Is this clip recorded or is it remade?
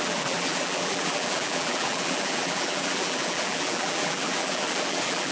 remade